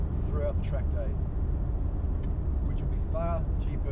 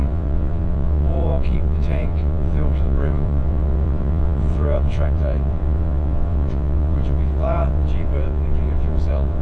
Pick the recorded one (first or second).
first